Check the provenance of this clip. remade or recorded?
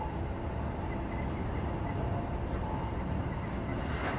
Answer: recorded